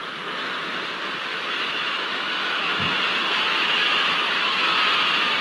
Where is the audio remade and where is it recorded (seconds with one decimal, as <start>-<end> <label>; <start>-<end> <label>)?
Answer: 0.0-1.3 recorded; 1.3-4.5 remade; 4.5-5.4 recorded